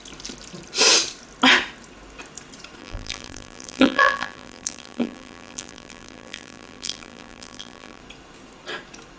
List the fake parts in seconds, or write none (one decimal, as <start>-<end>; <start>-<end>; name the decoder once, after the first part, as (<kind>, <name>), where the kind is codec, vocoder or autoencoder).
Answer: 2.8-8.0 (vocoder, BigVGAN v2)